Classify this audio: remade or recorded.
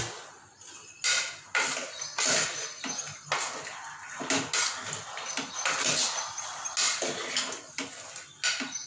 recorded